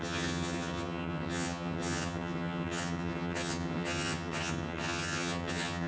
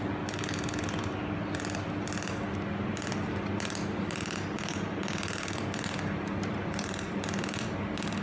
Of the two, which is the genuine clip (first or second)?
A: second